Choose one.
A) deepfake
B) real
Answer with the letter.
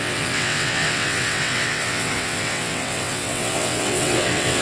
A